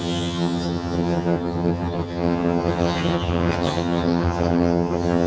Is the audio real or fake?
fake